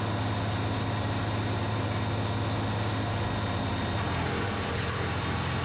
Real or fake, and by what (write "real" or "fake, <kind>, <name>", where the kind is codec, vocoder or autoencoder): real